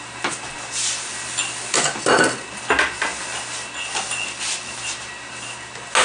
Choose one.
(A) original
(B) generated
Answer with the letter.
A